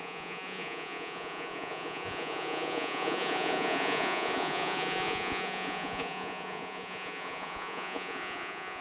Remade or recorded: remade